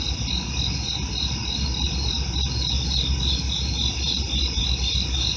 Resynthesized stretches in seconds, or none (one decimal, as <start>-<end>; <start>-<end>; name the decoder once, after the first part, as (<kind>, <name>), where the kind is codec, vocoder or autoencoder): none